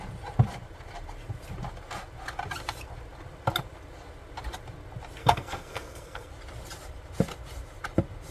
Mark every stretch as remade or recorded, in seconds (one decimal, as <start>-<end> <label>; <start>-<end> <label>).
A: 0.0-5.2 recorded; 5.2-6.3 remade; 6.3-8.3 recorded